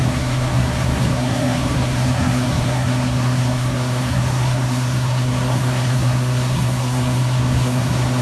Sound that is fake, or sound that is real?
fake